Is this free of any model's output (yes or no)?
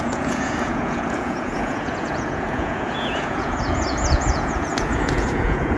no